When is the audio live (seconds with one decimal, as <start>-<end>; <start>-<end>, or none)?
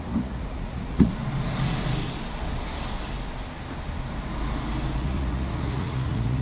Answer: 1.2-5.0